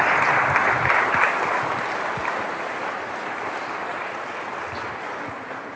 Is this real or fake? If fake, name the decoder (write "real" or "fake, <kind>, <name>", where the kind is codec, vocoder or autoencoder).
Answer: real